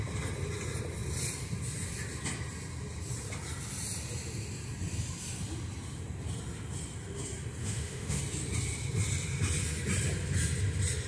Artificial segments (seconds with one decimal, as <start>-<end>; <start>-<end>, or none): 7.6-8.2